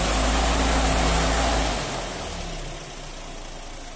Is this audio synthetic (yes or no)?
no